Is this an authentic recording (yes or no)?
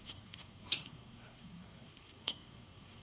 no